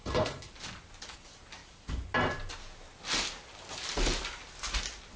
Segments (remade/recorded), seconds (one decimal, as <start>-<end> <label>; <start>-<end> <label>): 0.0-0.5 remade; 0.5-5.2 recorded